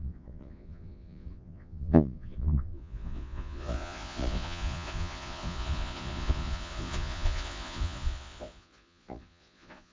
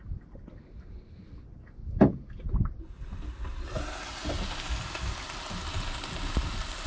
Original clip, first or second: second